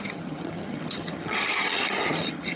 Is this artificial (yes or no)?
yes